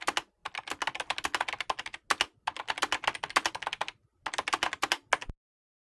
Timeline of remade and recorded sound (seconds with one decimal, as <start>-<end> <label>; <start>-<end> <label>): 0.0-5.9 recorded